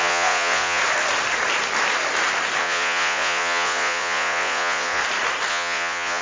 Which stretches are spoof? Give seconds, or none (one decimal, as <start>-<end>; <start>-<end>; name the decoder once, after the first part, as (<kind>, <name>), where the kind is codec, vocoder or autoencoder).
0.0-0.8 (vocoder, Vocos); 2.6-5.0; 5.5-6.2